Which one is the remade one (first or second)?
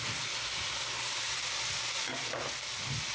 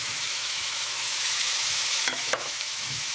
second